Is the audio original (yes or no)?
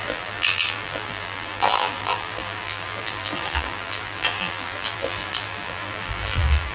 no